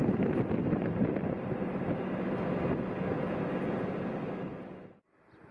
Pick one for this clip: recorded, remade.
recorded